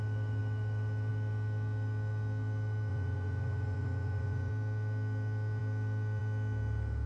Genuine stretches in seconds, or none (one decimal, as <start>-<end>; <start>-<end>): 0.0-2.9; 4.5-7.1

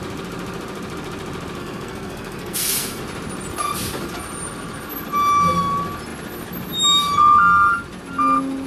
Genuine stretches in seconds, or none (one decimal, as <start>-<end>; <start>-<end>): 0.0-1.6; 3.0-8.7